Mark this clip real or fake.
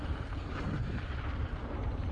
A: fake